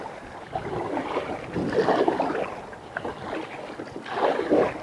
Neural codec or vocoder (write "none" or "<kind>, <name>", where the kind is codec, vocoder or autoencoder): none